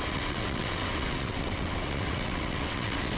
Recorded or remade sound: remade